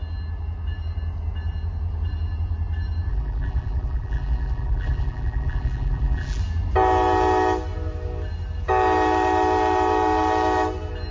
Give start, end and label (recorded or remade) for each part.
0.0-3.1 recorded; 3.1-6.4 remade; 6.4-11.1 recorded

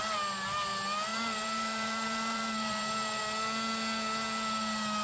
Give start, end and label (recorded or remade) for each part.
0.0-1.1 recorded; 1.1-3.2 remade; 3.2-5.0 recorded

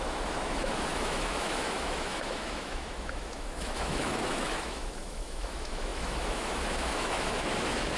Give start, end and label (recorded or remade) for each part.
0.0-8.0 remade

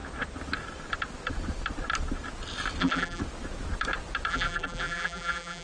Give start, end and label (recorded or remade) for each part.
0.0-2.8 recorded; 2.8-3.2 remade; 3.2-4.3 recorded; 4.3-5.6 remade

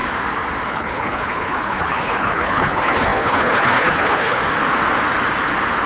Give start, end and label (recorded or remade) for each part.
0.0-0.7 recorded; 0.7-4.4 remade; 4.4-5.9 recorded

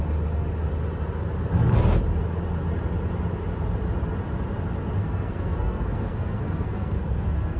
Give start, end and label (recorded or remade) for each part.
0.0-5.0 recorded; 5.0-7.6 remade

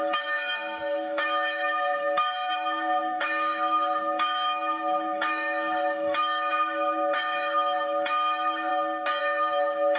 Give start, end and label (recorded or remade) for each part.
0.0-8.7 remade; 8.7-9.2 recorded; 9.2-10.0 remade

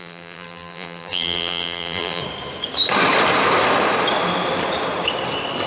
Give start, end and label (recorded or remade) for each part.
0.0-2.2 remade; 2.2-5.7 recorded